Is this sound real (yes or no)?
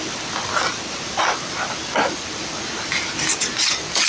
yes